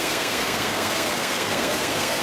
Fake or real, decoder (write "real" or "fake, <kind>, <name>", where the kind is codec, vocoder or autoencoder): fake, codec, SNAC